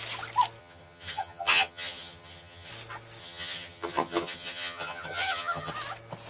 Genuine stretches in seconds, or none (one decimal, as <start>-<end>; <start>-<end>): 0.0-0.6; 2.7-3.2; 5.7-6.3